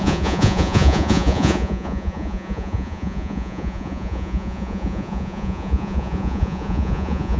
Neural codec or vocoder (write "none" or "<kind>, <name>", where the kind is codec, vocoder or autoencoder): vocoder, Vocos